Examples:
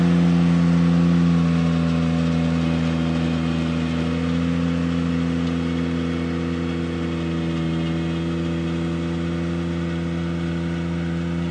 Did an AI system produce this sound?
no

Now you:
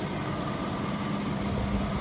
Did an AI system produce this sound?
no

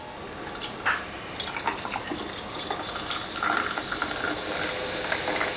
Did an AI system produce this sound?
no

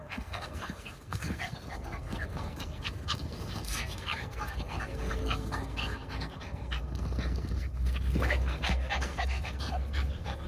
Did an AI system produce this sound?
yes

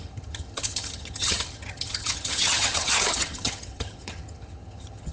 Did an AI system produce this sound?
yes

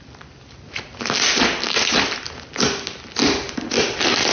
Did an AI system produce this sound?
no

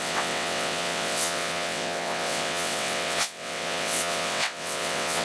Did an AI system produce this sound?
yes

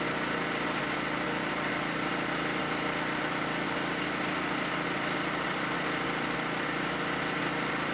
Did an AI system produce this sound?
no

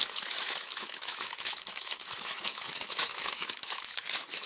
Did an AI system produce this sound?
yes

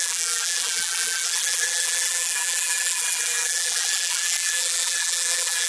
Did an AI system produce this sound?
yes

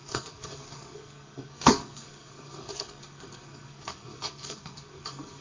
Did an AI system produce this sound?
yes